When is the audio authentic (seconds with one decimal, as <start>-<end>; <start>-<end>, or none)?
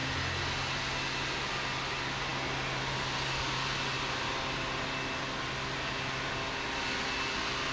0.0-7.7